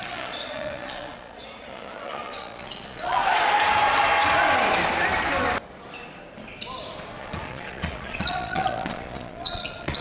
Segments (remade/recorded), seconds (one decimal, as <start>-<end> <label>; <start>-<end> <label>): 0.0-3.2 remade; 3.2-7.2 recorded; 7.2-10.0 remade